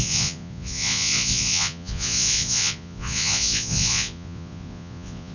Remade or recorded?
remade